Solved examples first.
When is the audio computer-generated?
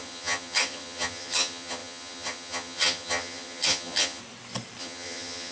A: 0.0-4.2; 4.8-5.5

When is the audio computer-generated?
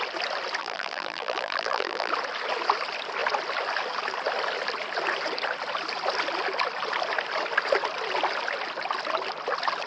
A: 0.6-2.1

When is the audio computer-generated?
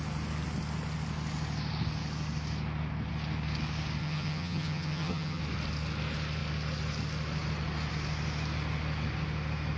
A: 4.0-5.4